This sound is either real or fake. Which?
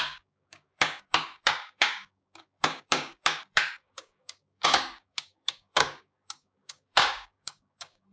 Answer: fake